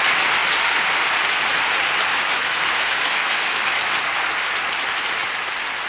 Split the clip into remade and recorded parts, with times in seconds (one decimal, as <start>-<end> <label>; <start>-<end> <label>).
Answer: 0.0-2.1 recorded; 2.1-4.0 remade; 4.0-5.9 recorded